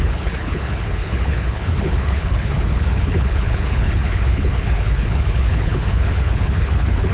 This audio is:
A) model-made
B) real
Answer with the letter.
A